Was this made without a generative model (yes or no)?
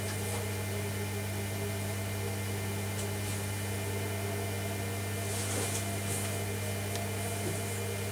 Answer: yes